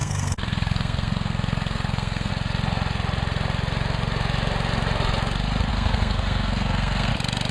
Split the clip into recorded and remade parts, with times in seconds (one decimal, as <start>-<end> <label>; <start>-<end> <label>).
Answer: 0.0-2.3 remade; 2.3-5.7 recorded; 5.7-7.1 remade; 7.1-7.5 recorded